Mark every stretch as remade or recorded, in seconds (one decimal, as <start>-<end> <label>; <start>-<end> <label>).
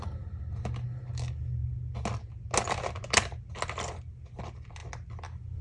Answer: 0.0-5.6 recorded